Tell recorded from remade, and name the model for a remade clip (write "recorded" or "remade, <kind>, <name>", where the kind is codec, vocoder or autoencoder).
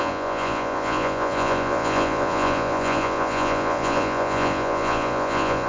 remade, vocoder, Vocos